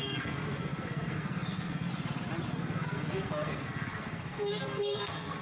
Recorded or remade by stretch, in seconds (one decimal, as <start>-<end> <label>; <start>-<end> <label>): 0.0-1.9 remade; 1.9-2.5 recorded; 2.5-5.4 remade